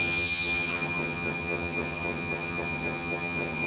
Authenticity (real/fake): fake